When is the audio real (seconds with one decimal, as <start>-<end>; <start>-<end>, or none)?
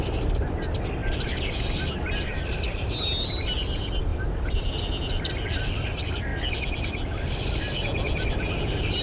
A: 0.0-9.0